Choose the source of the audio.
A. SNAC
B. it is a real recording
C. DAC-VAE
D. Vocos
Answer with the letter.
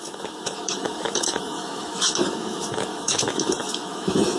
C